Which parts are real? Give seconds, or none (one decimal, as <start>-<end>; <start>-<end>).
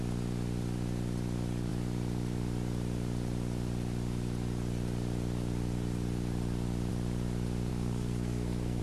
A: 0.0-7.7